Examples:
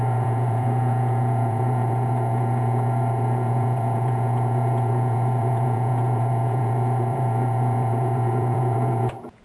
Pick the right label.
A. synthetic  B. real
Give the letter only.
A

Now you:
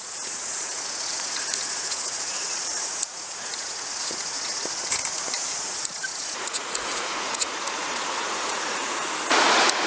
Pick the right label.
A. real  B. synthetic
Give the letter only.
B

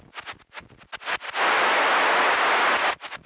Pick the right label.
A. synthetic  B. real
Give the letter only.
B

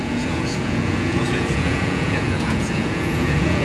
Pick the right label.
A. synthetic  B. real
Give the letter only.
A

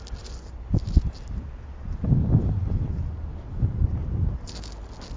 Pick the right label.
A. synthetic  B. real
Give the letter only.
B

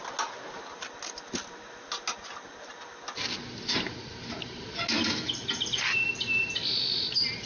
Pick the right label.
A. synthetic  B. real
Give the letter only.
B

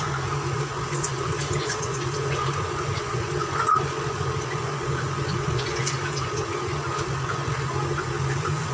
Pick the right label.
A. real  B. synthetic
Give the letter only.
B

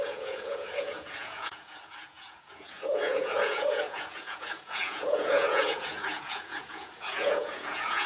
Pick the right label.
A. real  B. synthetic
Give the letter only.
B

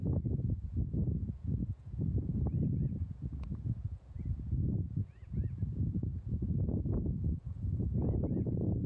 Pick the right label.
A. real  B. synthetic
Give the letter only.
B